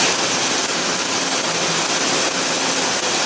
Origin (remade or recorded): recorded